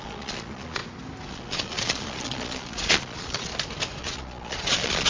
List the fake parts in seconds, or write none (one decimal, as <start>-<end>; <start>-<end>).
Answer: 0.0-0.8; 1.3-3.5; 4.0-5.1